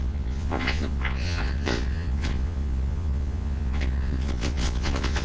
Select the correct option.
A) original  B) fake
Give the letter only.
B